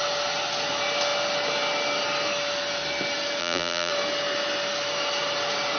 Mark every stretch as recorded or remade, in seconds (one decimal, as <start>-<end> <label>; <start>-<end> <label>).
0.0-3.4 recorded; 3.4-3.9 remade; 3.9-5.8 recorded